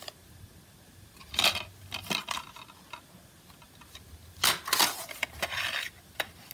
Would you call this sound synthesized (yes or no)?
no